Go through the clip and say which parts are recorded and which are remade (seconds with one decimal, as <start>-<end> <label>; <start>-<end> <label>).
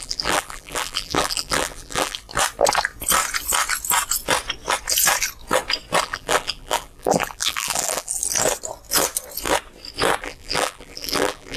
0.0-2.2 remade; 2.2-6.0 recorded; 6.0-8.2 remade; 8.2-10.2 recorded; 10.2-11.6 remade